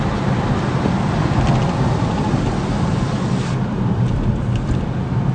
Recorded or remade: recorded